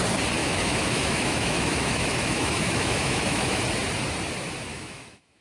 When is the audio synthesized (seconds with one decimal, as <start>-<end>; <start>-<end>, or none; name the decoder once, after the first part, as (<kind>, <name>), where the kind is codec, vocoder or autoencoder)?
0.4-3.6 (autoencoder, DAC-VAE); 4.7-5.4